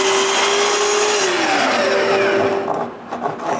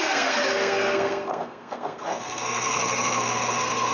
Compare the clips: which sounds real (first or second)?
first